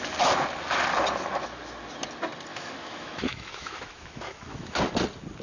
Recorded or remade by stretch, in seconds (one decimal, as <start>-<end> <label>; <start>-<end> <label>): 0.0-2.5 recorded; 2.5-4.8 remade; 4.8-5.4 recorded